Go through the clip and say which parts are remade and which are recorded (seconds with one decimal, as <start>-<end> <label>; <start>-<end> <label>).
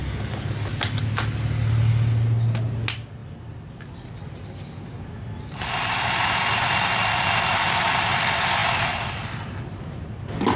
0.0-10.6 recorded